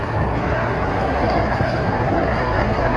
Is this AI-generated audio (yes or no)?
yes